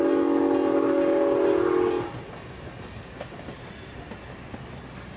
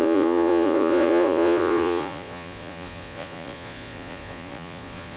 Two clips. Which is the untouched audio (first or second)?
first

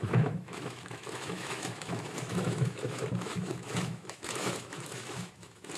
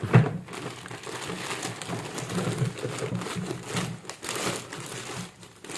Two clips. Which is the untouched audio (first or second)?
second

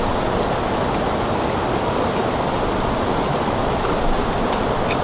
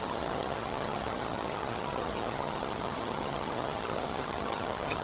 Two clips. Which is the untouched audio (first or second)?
first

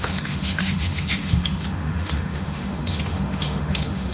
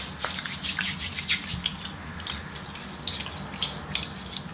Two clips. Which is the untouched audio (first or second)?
second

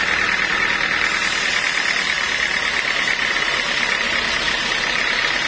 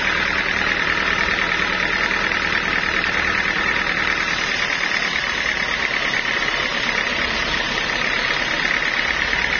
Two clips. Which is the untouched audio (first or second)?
first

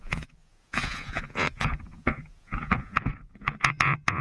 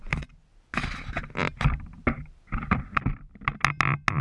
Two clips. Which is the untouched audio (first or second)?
second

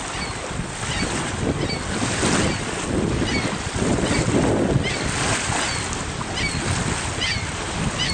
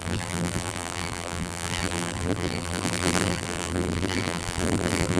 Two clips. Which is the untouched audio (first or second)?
first